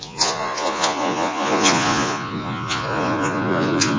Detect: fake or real fake